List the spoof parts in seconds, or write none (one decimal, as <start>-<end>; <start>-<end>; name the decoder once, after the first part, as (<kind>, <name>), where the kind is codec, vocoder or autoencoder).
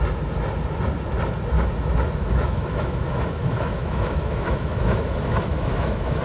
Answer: 2.2-6.2 (autoencoder, DAC-VAE)